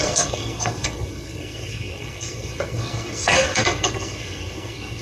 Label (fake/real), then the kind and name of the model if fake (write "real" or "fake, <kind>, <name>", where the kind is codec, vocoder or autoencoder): fake, codec, SNAC